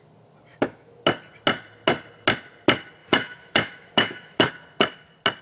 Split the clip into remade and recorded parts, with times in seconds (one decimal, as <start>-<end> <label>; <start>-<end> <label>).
0.0-0.5 recorded; 0.5-1.0 remade; 1.0-3.0 recorded; 3.0-4.5 remade; 4.5-5.4 recorded